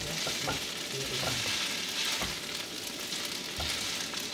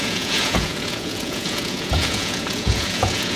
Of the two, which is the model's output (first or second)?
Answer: second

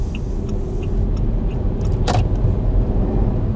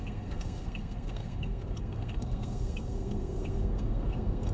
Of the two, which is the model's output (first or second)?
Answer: second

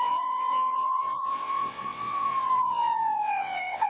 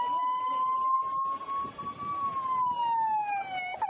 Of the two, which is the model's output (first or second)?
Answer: first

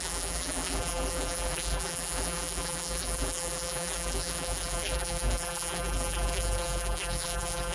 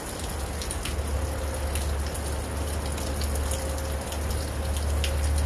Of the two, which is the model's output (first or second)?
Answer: first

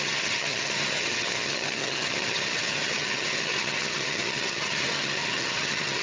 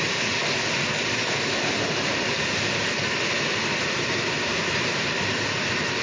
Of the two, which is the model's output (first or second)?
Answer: first